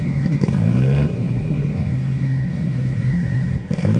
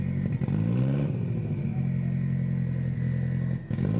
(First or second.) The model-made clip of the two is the first